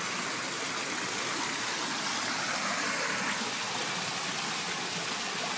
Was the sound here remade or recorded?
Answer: recorded